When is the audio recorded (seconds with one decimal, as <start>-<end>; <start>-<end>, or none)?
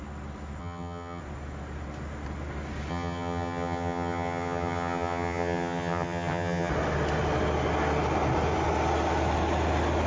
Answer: 0.0-0.6; 1.2-2.9; 6.7-10.1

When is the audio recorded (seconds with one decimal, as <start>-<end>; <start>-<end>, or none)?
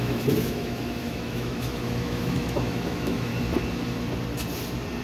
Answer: 3.3-5.0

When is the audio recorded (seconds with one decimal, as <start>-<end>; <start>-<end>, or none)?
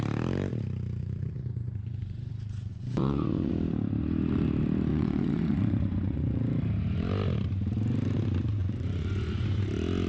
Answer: 0.0-1.0; 2.3-2.7; 3.5-4.9; 6.4-8.6; 9.6-10.1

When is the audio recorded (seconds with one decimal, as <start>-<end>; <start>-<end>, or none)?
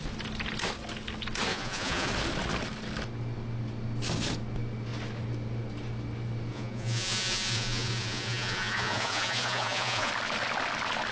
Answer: 0.0-1.5; 2.1-6.5; 10.1-11.1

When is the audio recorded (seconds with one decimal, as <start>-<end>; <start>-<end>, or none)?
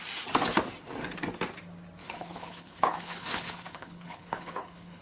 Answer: 0.0-2.0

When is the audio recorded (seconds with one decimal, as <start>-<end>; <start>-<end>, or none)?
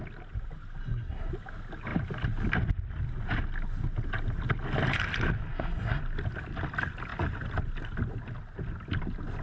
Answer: 0.0-0.8; 1.3-5.5; 6.0-9.4